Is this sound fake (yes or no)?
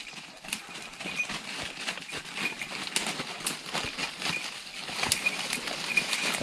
no